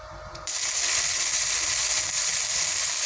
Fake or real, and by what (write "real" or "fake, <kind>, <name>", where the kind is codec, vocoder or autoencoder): real